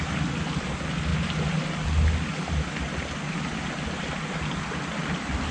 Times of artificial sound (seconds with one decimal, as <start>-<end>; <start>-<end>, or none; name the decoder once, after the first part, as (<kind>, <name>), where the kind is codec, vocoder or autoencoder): none